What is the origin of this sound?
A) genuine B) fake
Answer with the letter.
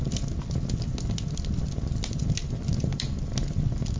A